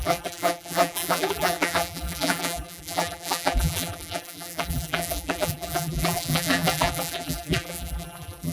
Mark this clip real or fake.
fake